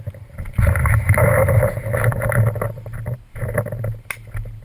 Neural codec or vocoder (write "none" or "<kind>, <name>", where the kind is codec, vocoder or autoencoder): none